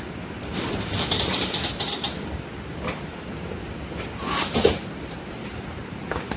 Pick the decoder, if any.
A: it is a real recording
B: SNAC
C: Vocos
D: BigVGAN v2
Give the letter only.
D